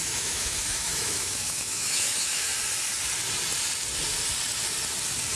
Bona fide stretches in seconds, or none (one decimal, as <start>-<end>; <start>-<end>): 2.5-5.4